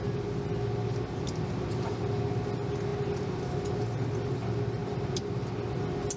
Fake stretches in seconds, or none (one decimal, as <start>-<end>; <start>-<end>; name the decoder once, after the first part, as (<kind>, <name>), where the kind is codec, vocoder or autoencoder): none